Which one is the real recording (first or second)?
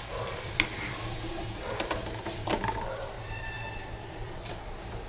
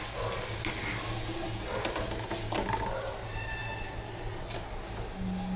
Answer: second